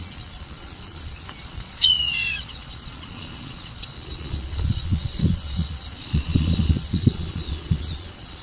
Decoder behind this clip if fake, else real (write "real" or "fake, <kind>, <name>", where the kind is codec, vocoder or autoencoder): fake, vocoder, Vocos